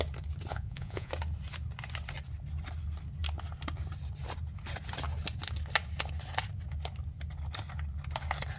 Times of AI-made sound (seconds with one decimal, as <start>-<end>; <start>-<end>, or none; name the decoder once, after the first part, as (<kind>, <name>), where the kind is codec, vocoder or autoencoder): 0.5-1.1 (vocoder, Vocos)